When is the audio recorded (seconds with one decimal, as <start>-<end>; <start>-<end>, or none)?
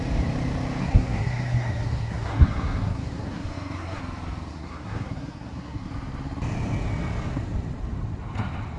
0.0-0.8; 4.0-4.5; 5.9-8.8